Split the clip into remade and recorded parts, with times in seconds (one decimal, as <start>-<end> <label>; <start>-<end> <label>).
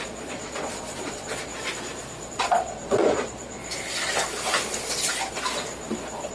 0.0-1.5 remade; 1.5-2.3 recorded; 2.3-3.6 remade; 3.6-6.3 recorded